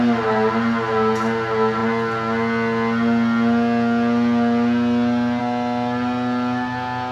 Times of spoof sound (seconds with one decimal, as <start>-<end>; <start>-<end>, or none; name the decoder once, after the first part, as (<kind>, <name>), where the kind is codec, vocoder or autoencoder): none